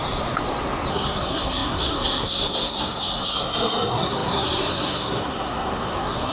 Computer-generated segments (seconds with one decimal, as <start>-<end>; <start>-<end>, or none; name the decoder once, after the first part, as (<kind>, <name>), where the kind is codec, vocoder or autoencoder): 0.9-6.3 (codec, SNAC)